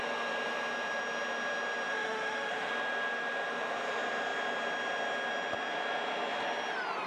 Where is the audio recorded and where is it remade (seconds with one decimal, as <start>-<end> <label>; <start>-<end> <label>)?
0.0-1.9 recorded; 1.9-2.7 remade; 2.7-7.1 recorded